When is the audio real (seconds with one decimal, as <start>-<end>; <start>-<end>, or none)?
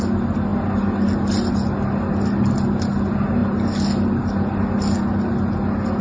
0.0-6.0